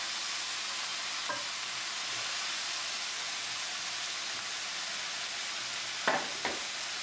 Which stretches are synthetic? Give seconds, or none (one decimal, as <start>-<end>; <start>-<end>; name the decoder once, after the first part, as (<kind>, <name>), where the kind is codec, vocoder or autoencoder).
none